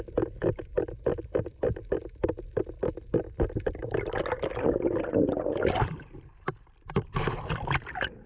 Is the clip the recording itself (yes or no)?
yes